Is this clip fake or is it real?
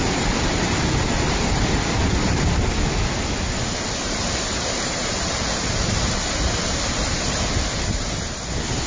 real